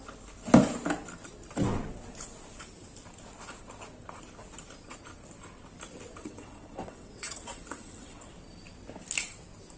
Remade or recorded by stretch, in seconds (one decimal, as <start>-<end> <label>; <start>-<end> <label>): 0.0-6.2 recorded; 6.2-8.3 remade; 8.3-9.8 recorded